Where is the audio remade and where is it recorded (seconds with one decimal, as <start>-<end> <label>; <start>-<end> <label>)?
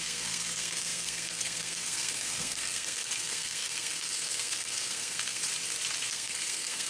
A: 0.0-5.4 remade; 5.4-6.0 recorded; 6.0-6.9 remade